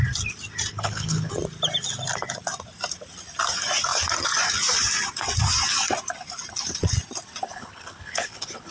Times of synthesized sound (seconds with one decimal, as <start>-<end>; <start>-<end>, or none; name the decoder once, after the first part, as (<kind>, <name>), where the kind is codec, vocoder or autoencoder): 0.7-1.3 (codec, HILCodec); 7.5-8.7